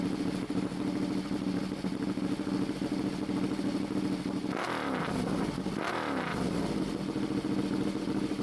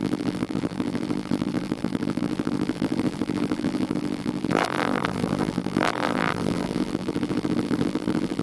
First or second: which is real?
first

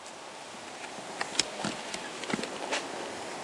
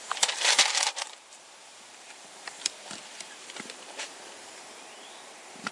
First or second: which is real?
first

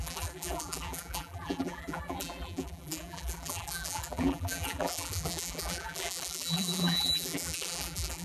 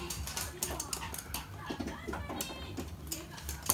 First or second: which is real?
second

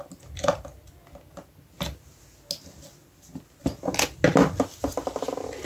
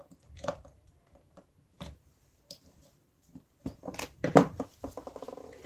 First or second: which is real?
first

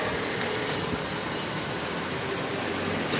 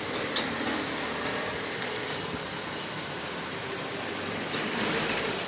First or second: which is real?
first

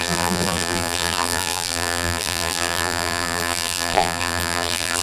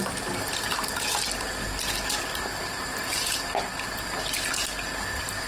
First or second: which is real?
second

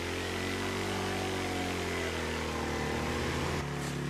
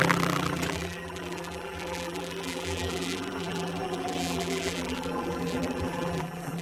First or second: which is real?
first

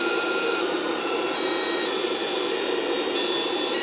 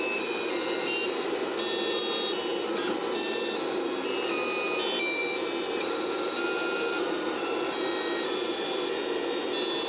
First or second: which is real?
second